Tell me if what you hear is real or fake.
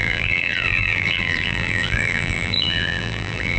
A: fake